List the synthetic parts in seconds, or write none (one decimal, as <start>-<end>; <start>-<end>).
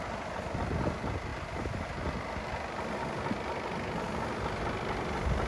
none